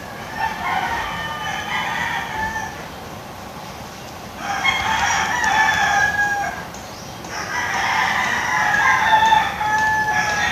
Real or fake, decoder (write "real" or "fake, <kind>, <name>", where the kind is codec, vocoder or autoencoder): real